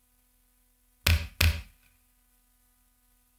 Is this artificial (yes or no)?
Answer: no